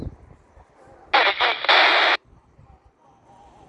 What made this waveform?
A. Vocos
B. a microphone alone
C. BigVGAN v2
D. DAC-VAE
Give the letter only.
B